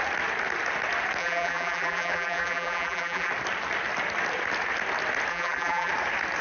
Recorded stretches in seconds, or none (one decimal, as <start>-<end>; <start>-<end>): 0.0-1.2; 3.3-5.3; 5.9-6.4